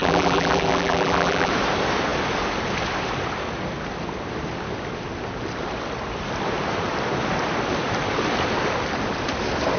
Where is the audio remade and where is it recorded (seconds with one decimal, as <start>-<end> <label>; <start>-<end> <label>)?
0.0-1.5 remade; 1.5-9.8 recorded

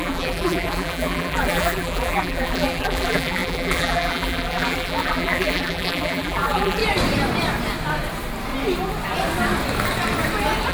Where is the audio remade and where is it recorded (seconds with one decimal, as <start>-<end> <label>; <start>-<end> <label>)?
0.0-6.8 remade; 6.8-10.7 recorded

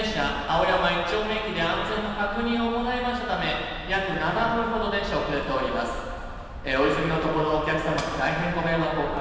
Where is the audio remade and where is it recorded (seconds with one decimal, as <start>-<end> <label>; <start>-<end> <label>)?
0.0-1.8 recorded; 1.8-2.7 remade; 2.7-6.2 recorded; 6.2-9.2 remade